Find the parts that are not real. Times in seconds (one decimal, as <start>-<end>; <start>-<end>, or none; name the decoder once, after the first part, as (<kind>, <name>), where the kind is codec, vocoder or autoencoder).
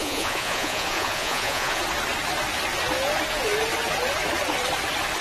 0.0-1.8 (vocoder, Vocos)